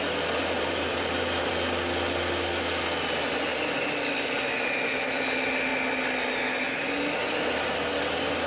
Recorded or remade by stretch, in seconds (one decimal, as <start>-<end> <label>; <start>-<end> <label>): 0.0-0.4 recorded; 0.4-1.5 remade; 1.5-8.5 recorded